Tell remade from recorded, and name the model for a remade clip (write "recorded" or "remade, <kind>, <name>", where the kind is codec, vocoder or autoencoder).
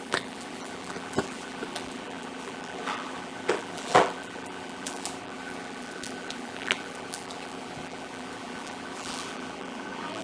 remade, vocoder, BigVGAN v2